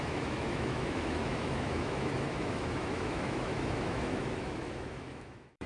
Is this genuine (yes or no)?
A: no